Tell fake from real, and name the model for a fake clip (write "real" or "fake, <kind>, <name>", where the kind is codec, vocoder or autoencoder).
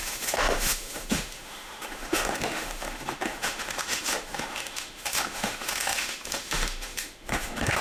fake, autoencoder, DAC-VAE